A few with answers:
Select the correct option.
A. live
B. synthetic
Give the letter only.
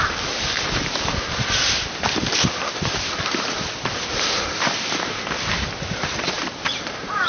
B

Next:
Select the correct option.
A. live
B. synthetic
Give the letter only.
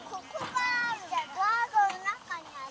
A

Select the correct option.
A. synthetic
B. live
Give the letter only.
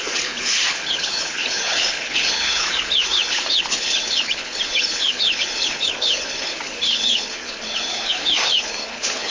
A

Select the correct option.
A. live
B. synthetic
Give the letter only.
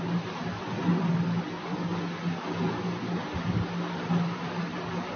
A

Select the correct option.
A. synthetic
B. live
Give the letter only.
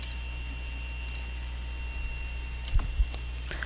B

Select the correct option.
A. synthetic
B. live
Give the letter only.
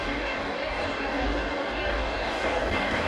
A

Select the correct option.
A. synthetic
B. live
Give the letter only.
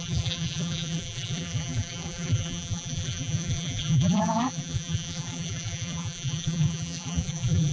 A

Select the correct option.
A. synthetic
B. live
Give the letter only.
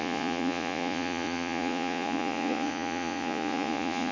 A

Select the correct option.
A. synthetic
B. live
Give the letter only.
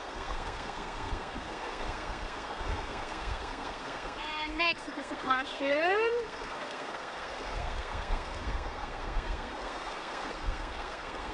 A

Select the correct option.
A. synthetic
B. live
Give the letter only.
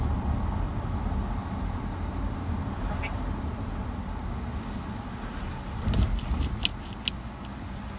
B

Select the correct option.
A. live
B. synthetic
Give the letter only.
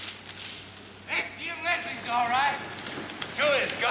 A